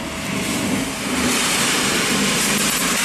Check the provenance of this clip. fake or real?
real